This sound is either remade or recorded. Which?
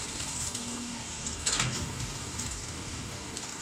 remade